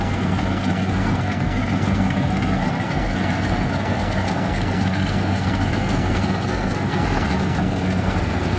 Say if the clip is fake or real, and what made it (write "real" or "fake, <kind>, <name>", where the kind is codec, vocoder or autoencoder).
fake, codec, SNAC